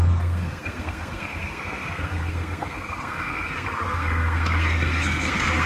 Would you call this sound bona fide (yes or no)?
no